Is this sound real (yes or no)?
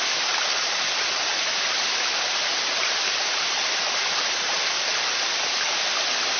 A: yes